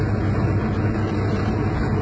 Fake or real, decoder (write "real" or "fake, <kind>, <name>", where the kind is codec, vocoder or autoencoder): real